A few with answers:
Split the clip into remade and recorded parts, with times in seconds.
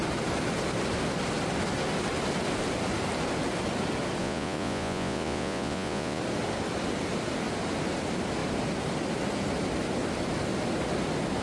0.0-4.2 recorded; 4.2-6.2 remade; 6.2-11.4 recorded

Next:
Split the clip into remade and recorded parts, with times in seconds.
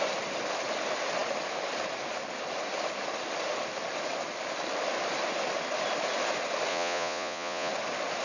0.0-6.7 recorded; 6.7-7.7 remade; 7.7-8.2 recorded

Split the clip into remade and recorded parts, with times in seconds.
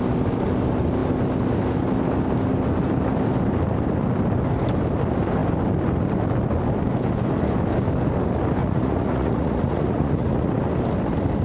0.0-8.6 recorded; 8.6-10.5 remade; 10.5-11.4 recorded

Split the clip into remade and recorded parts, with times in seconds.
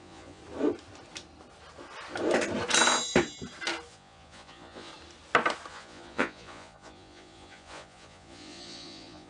0.0-0.4 remade; 0.4-3.9 recorded; 3.9-4.9 remade; 4.9-5.7 recorded; 5.7-9.3 remade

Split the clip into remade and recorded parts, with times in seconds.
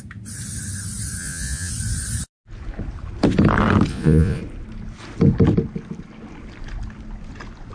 0.0-1.2 recorded; 1.2-1.7 remade; 1.7-3.9 recorded; 3.9-4.4 remade; 4.4-7.7 recorded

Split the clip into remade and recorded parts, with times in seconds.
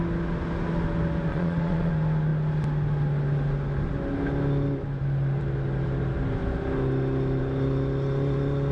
0.0-1.3 recorded; 1.3-1.9 remade; 1.9-8.7 recorded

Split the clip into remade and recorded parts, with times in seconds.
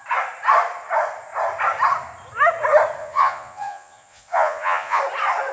0.0-3.0 recorded; 3.0-5.0 remade; 5.0-5.5 recorded